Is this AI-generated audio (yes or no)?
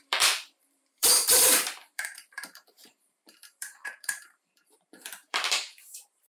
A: yes